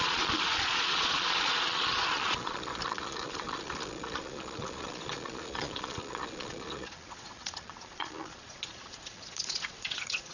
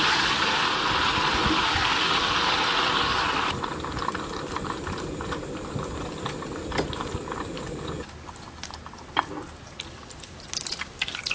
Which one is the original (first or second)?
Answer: second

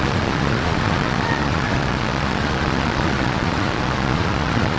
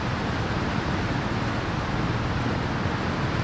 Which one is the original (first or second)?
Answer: second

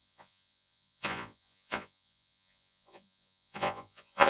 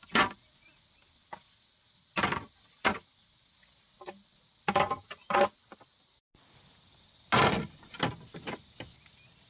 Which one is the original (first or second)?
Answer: second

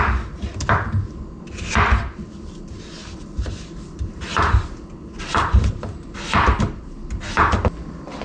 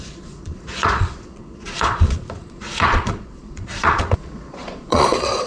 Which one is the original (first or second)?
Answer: first